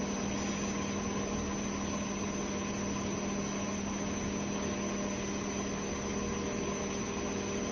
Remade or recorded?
recorded